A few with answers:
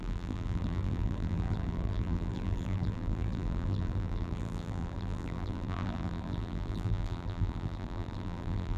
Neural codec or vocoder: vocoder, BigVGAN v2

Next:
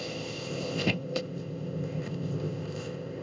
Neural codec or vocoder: codec, ZipCodec